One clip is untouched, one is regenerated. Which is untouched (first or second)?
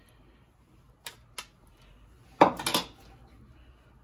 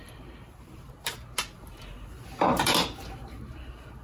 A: first